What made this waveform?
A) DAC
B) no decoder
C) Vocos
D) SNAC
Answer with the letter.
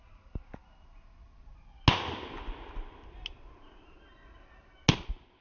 B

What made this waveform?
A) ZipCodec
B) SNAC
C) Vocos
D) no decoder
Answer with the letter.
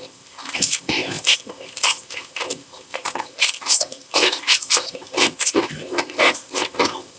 A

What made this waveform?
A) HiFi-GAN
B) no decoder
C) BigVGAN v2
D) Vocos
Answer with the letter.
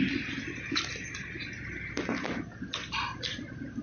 B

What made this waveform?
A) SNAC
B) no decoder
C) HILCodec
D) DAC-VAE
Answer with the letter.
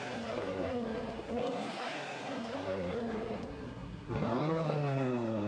A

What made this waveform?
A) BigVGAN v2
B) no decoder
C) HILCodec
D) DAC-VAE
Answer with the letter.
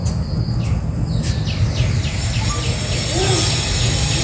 B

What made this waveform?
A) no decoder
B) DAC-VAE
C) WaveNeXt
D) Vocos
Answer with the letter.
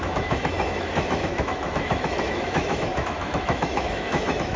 B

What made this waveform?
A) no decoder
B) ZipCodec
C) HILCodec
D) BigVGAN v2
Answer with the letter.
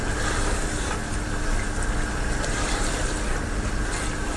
A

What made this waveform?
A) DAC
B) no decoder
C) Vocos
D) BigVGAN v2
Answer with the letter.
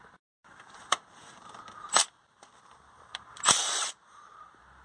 D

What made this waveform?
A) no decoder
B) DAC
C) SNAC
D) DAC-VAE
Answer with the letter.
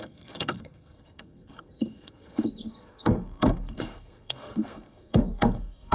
C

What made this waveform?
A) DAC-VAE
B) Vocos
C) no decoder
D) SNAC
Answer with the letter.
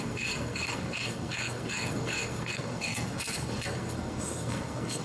D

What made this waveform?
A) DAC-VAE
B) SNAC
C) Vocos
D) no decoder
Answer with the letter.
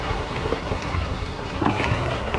B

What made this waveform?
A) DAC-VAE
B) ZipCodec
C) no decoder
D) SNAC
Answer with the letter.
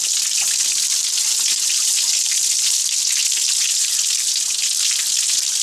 C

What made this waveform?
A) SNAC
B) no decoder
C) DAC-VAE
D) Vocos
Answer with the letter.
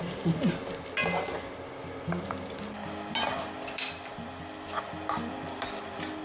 B